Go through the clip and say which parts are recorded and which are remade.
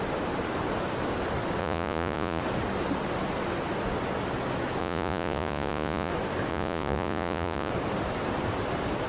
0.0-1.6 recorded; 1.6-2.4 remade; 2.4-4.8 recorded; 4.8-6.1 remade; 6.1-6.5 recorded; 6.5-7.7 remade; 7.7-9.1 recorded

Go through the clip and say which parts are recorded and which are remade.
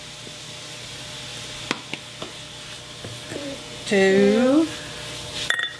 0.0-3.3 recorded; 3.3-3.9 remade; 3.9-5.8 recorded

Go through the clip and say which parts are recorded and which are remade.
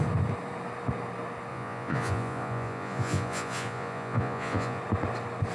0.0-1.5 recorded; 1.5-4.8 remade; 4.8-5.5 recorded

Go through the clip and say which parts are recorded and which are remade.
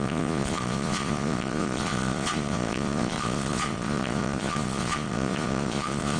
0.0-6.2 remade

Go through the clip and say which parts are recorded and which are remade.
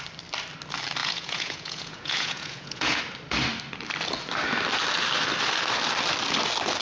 0.0-1.0 recorded; 1.0-3.0 remade; 3.0-6.8 recorded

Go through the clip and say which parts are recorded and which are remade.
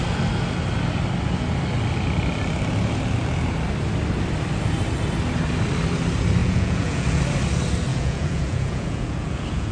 0.0-6.4 recorded; 6.4-7.2 remade; 7.2-7.9 recorded; 7.9-9.7 remade